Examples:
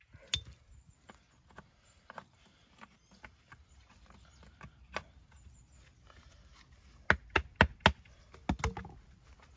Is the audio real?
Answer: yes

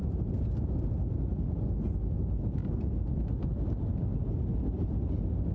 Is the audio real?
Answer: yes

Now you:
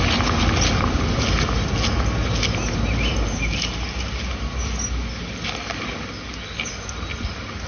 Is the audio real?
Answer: yes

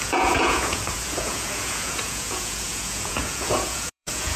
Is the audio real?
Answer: no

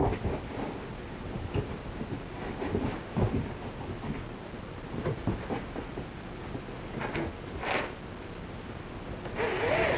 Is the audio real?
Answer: yes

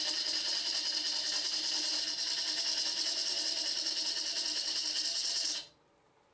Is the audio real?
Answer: yes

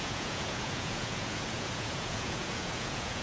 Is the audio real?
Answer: no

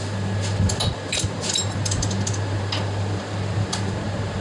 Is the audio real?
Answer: yes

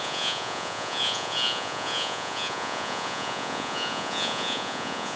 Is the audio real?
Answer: no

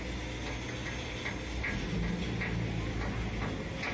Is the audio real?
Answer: yes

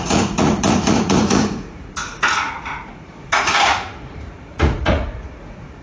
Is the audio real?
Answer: no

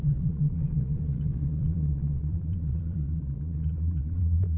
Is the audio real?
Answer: no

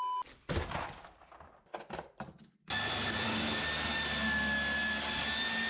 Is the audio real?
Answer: yes